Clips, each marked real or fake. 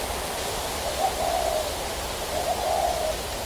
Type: real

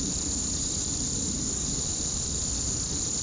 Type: real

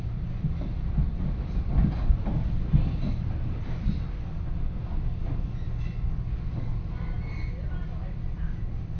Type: real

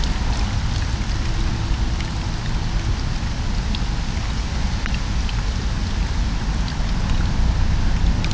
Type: real